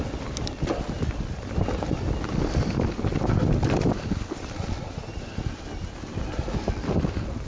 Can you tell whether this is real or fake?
real